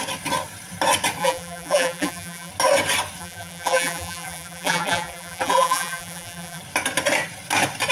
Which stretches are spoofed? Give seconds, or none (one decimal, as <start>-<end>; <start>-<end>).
1.2-2.5; 3.2-6.6